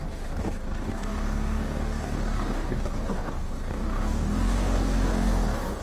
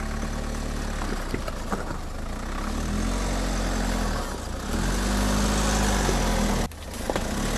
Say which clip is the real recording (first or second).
second